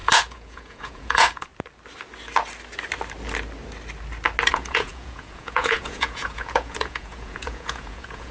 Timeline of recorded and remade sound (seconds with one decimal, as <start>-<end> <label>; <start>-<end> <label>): 0.0-1.5 remade; 1.5-4.5 recorded; 4.5-8.3 remade